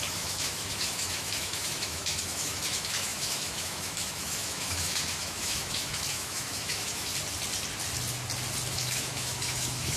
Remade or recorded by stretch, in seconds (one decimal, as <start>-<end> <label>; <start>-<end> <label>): 0.0-7.1 remade; 7.1-8.7 recorded; 8.7-10.0 remade

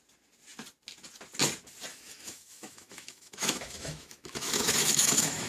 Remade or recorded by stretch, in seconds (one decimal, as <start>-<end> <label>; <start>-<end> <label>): 0.0-1.9 recorded; 1.9-5.5 remade

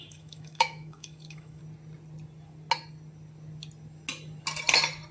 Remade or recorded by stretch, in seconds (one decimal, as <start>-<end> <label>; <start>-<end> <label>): 0.0-1.6 remade; 1.6-5.1 recorded

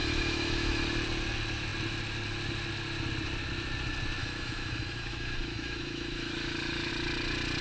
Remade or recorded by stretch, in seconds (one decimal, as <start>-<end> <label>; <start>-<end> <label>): 0.0-0.8 remade; 0.8-4.2 recorded; 4.2-6.9 remade; 6.9-7.6 recorded

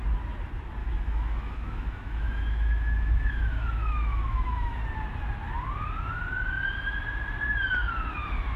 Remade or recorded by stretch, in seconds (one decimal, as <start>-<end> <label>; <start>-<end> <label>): 0.0-0.8 recorded; 0.8-4.8 remade; 4.8-8.6 recorded

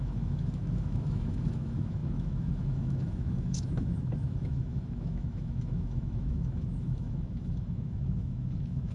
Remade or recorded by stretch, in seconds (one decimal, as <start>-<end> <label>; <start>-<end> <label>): 0.0-8.9 remade